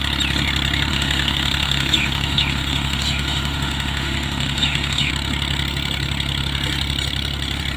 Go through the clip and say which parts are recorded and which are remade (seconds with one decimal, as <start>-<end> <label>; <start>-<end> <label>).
0.0-0.9 recorded; 0.9-5.1 remade; 5.1-7.8 recorded